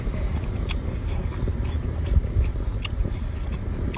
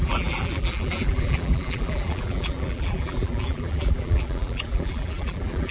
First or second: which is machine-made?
second